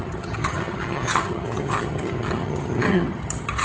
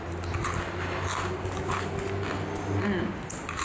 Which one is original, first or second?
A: second